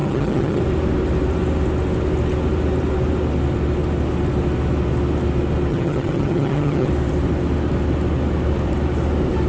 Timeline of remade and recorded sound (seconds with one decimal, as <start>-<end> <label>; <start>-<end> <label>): 0.0-0.6 remade; 0.6-5.7 recorded; 5.7-6.9 remade; 6.9-9.5 recorded